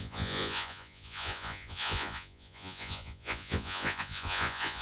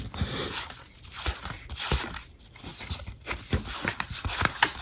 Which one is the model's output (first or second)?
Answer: first